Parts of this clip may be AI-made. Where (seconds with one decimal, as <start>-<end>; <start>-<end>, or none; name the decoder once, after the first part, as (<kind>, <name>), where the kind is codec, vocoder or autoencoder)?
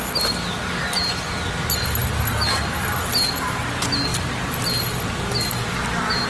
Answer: none